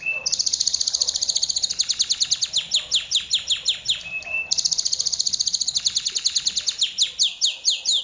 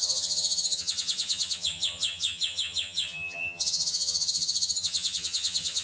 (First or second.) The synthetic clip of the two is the second